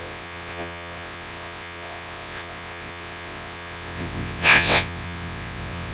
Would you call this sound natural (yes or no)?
no